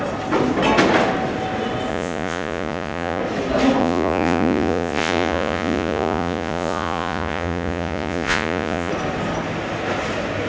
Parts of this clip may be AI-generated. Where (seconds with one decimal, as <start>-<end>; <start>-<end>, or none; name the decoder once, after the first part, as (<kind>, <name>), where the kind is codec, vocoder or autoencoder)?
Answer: 1.9-3.2 (vocoder, Vocos); 3.8-8.9